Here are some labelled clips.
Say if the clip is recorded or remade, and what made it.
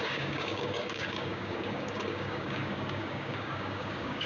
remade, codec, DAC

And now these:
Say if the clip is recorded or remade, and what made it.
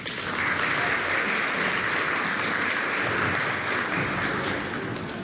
recorded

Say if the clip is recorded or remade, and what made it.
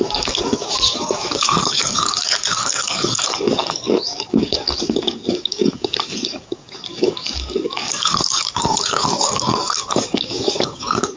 remade, codec, DAC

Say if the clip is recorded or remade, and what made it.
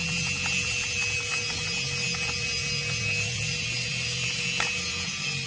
recorded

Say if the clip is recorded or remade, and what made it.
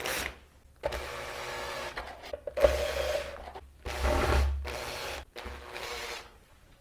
recorded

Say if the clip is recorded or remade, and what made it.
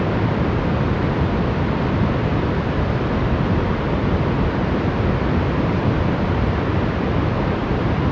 recorded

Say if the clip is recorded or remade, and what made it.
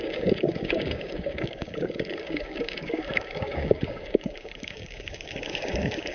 remade, codec, DAC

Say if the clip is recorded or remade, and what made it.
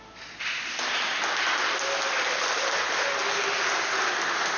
recorded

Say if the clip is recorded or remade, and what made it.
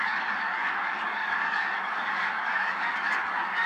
remade, codec, DAC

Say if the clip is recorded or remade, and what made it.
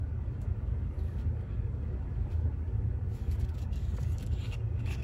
remade, codec, DAC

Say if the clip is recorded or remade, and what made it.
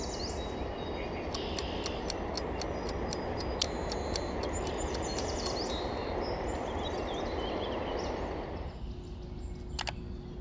recorded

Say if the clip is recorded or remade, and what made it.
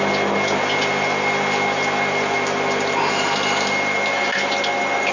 recorded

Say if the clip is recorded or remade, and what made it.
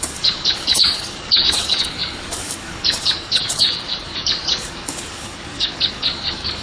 remade, codec, DAC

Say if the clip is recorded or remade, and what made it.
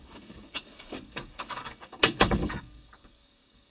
remade, codec, DAC